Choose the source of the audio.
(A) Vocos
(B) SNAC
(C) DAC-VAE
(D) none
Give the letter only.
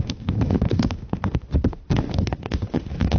C